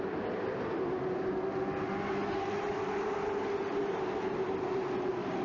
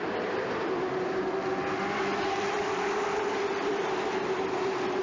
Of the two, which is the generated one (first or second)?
second